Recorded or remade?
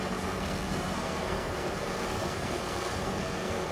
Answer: remade